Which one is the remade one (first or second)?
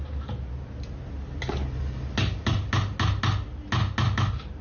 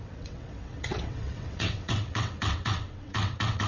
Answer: second